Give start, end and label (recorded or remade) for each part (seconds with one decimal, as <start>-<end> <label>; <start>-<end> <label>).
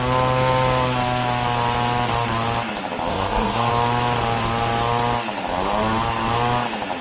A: 0.0-3.1 recorded; 3.1-3.7 remade; 3.7-7.0 recorded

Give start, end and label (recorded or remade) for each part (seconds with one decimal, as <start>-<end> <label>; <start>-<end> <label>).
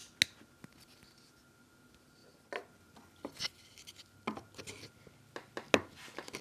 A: 0.0-6.4 recorded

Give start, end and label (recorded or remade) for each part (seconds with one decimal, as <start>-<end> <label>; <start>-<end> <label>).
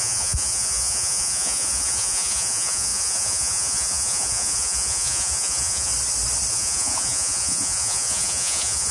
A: 0.0-5.9 remade; 5.9-6.5 recorded; 6.5-8.9 remade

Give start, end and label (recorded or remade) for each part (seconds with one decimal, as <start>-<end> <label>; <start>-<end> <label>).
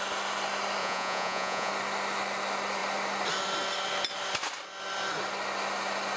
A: 0.0-0.8 recorded; 0.8-1.7 remade; 1.7-6.2 recorded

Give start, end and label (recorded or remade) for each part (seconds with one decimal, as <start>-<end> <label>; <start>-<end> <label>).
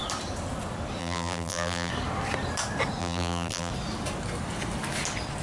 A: 0.0-1.0 recorded; 1.0-1.9 remade; 1.9-3.0 recorded; 3.0-3.7 remade; 3.7-5.4 recorded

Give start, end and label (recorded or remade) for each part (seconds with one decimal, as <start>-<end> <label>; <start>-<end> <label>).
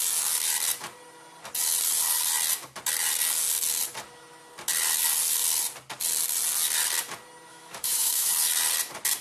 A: 0.0-7.5 recorded; 7.5-8.3 remade; 8.3-9.2 recorded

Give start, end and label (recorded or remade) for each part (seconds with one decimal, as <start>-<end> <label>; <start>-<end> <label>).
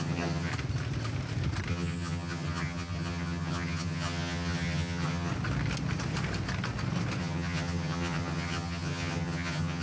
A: 0.0-0.5 remade; 0.5-1.7 recorded; 1.7-5.3 remade; 5.3-7.2 recorded; 7.2-9.8 remade